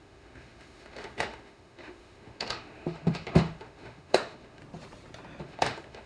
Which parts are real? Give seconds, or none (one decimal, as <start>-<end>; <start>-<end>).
4.6-5.4